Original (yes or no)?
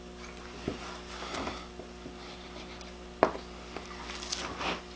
yes